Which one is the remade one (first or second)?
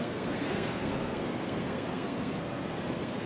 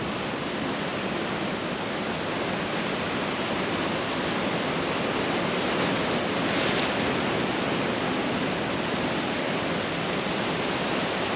first